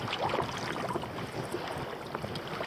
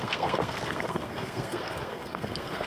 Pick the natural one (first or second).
first